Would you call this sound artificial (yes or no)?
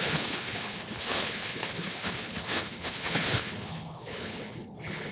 yes